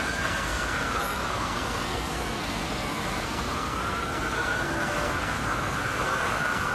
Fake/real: fake